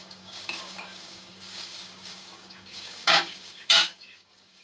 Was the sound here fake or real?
fake